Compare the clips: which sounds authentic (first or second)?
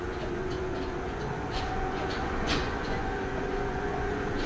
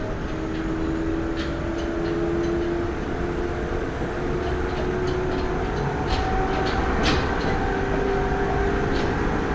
second